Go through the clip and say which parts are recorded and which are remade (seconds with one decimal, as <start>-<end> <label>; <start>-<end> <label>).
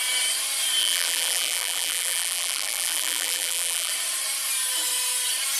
0.0-0.8 recorded; 0.8-3.9 remade; 3.9-5.6 recorded